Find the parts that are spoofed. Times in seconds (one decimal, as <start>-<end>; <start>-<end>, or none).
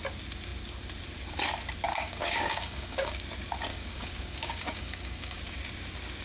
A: 1.9-3.2; 3.7-5.4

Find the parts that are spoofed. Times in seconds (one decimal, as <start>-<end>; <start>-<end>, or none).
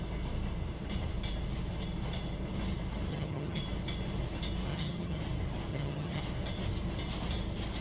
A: 3.1-3.6; 4.7-5.2; 5.7-6.2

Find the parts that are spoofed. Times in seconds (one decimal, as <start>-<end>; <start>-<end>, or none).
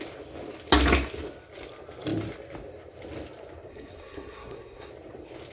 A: 3.7-4.9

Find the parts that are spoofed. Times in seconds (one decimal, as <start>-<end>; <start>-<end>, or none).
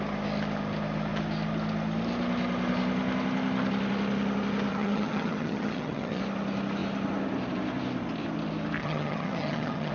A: 4.7-6.2; 8.8-9.9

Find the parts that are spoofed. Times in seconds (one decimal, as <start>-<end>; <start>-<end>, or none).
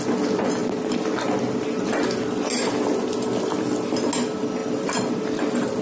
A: 0.6-1.9; 4.6-5.1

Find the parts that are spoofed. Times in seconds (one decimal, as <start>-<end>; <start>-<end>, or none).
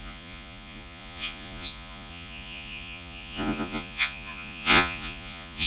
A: 0.0-5.7